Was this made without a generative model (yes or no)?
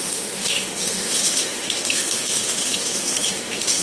no